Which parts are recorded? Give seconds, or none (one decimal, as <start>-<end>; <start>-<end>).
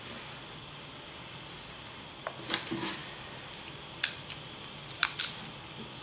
0.0-6.0